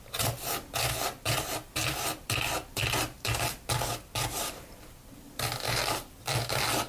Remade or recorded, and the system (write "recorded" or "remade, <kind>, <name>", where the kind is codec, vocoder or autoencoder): recorded